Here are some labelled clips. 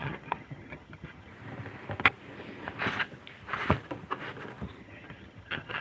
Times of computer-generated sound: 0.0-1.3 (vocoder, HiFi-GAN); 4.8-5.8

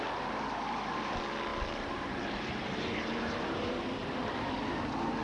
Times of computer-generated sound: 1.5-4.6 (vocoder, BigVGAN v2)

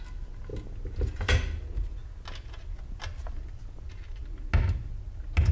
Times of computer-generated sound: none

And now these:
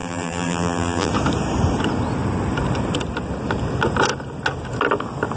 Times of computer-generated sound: 0.0-1.1 (vocoder, BigVGAN v2)

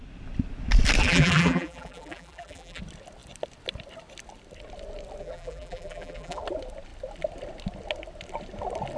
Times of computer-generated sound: 1.0-2.8 (vocoder, BigVGAN v2); 5.2-6.4

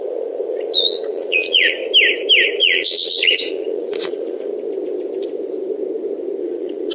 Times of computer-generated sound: 0.0-1.8 (vocoder, Vocos); 2.6-4.5; 6.4-6.9

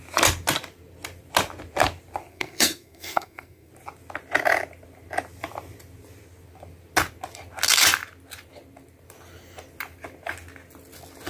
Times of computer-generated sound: 2.3-3.7 (codec, SNAC)

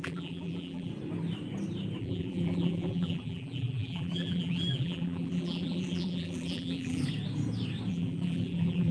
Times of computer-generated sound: 0.0-0.9 (vocoder, BigVGAN v2); 2.0-7.0; 7.9-8.9